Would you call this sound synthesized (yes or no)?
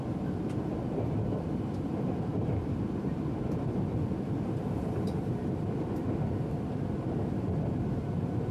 yes